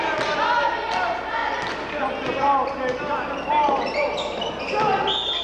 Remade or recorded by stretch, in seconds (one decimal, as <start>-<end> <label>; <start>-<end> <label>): 0.0-5.4 recorded